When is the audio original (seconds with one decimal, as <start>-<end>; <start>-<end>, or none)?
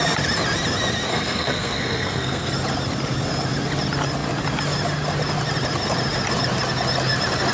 0.0-1.1; 2.5-7.5